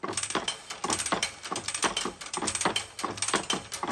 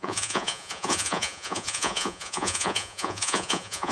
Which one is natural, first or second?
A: first